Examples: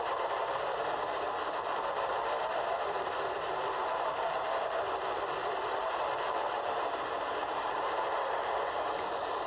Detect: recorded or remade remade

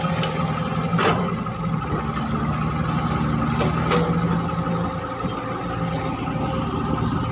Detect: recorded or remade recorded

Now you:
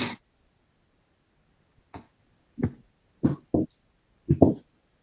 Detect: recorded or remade recorded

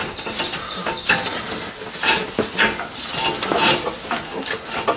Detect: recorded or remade recorded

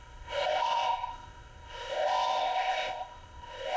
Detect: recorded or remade remade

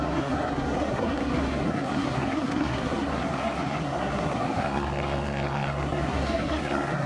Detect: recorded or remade remade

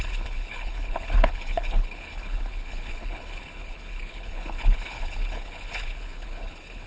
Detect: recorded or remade remade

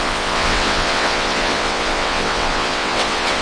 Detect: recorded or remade remade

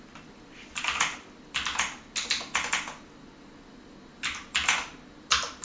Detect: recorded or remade recorded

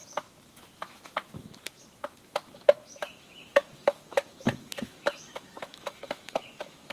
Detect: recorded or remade remade